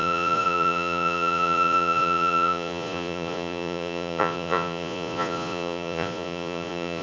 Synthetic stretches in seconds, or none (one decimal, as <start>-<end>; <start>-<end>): 0.0-7.0